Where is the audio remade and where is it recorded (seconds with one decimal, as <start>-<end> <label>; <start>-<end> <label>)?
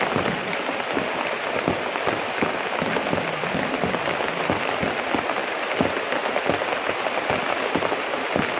0.0-8.6 recorded